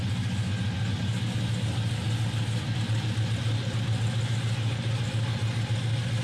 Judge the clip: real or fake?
real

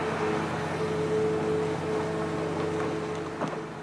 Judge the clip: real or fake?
real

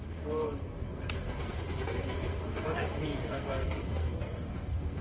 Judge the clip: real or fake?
fake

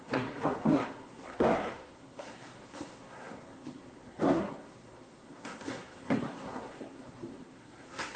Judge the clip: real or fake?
fake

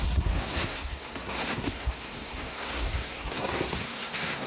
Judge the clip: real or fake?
fake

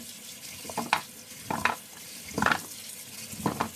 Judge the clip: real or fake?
real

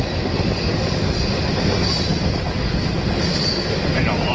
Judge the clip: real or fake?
real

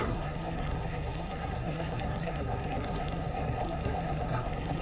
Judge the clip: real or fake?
fake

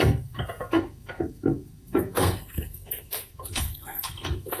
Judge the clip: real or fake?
fake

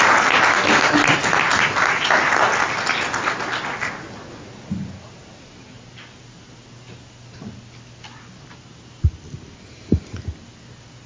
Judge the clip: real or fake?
real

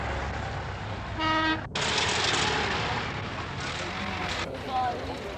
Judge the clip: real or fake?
real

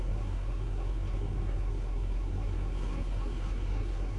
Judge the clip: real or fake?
fake